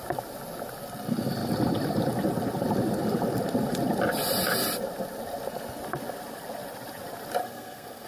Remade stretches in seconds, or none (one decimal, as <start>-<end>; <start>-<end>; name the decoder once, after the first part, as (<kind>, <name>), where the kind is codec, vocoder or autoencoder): 7.4-8.1 (codec, SNAC)